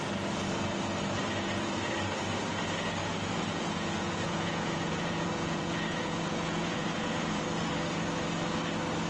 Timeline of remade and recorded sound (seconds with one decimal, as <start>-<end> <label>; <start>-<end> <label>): 0.0-3.0 recorded; 3.0-7.4 remade; 7.4-9.1 recorded